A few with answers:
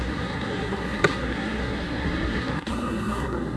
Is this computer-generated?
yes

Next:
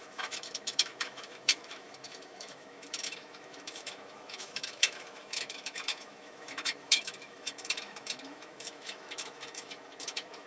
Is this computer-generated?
yes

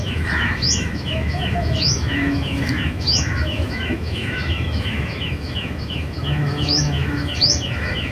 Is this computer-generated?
yes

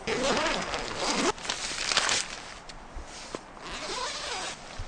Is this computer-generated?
no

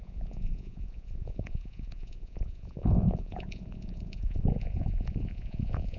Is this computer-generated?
yes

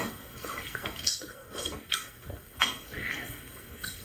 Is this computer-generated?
yes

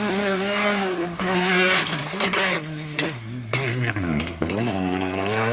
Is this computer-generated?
yes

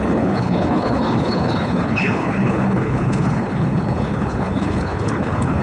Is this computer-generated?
yes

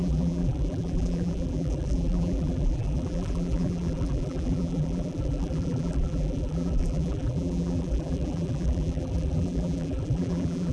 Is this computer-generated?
yes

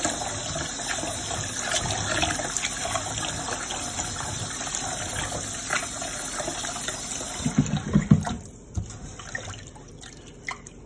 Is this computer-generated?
no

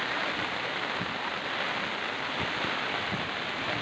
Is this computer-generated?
no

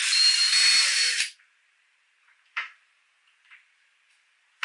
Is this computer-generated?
yes